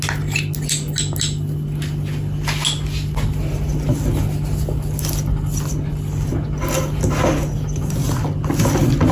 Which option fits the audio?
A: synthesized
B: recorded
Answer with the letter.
B